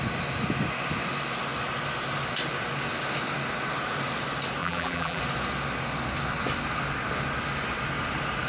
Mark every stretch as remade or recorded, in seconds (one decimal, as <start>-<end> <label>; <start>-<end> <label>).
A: 0.0-4.6 recorded; 4.6-5.2 remade; 5.2-8.5 recorded